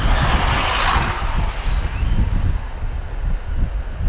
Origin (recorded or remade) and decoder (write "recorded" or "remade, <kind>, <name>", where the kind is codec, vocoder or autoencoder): recorded